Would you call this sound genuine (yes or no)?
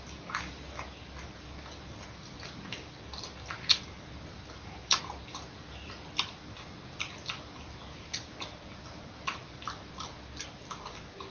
yes